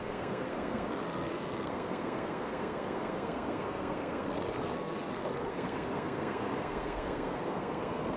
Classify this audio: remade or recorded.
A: remade